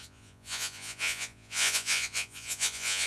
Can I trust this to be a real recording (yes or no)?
no